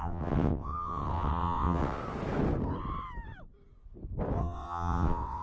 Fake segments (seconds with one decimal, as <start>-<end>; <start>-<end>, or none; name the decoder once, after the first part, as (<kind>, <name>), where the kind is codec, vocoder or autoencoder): 0.0-2.0 (vocoder, WaveNeXt); 4.4-5.4